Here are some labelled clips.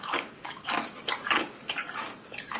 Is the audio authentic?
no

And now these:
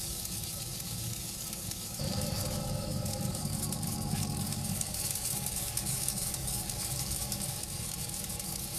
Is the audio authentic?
no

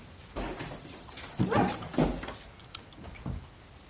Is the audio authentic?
yes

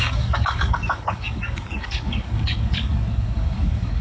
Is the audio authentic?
no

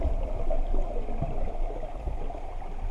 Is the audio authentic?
yes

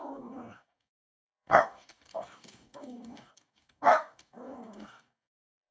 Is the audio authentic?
no